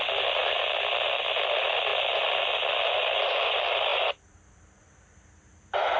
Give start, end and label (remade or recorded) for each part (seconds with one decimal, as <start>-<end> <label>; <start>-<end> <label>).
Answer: 0.0-1.9 remade; 1.9-2.9 recorded; 2.9-6.0 remade